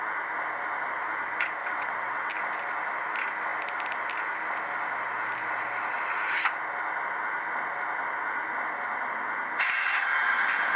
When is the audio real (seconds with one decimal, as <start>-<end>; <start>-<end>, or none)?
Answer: 0.0-1.6; 2.3-10.8